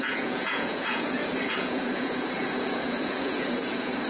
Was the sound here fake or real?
fake